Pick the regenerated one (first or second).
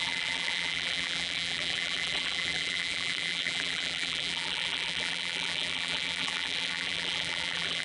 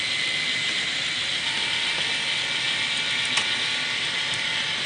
first